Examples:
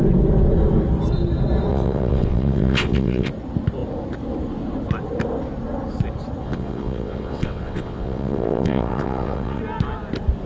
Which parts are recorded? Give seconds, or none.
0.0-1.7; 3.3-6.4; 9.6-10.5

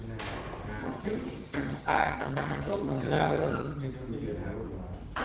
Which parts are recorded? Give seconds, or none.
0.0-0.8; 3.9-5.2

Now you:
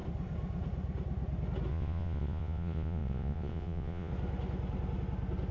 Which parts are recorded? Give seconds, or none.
0.0-1.7; 4.1-5.5

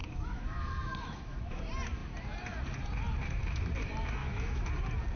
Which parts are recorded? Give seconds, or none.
1.6-4.2; 4.7-5.2

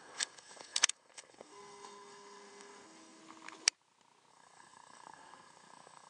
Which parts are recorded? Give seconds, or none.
3.2-4.3

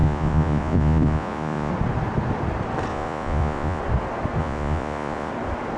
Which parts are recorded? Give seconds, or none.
1.7-2.9; 3.8-4.4; 5.3-5.8